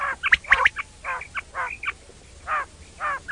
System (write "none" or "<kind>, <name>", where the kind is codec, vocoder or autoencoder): none